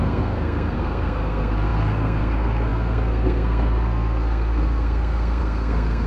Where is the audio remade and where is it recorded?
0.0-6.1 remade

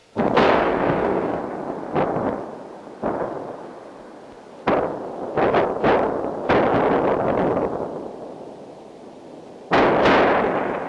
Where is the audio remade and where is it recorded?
0.0-1.4 remade; 1.4-10.9 recorded

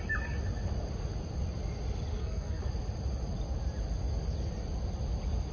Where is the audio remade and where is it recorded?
0.0-2.1 recorded; 2.1-2.6 remade; 2.6-5.5 recorded

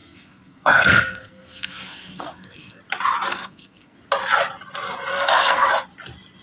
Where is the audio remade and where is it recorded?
0.0-2.8 remade; 2.8-3.3 recorded; 3.3-4.0 remade; 4.0-5.1 recorded; 5.1-5.7 remade; 5.7-6.4 recorded

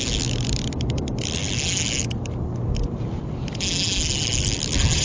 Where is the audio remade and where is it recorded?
0.0-5.0 recorded

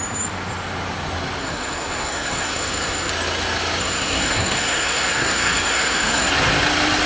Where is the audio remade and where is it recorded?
0.0-1.4 recorded; 1.4-3.1 remade; 3.1-3.8 recorded; 3.8-6.3 remade; 6.3-7.1 recorded